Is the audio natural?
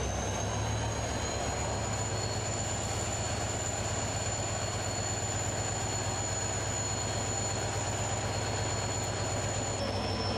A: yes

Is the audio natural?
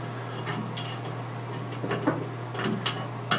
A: yes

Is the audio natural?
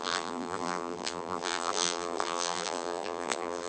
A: no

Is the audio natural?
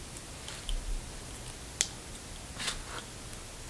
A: yes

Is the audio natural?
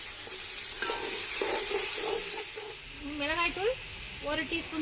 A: yes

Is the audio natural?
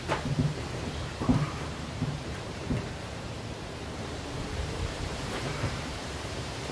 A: no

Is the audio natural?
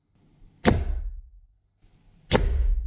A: yes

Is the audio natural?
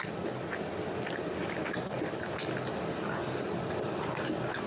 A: yes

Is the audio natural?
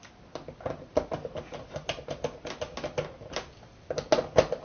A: yes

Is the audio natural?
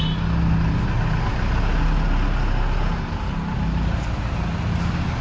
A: yes